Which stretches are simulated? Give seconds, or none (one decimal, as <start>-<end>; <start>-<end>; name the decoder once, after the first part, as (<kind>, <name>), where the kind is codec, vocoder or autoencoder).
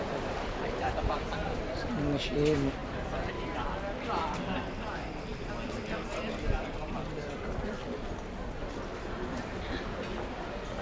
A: 0.4-1.0 (codec, HILCodec)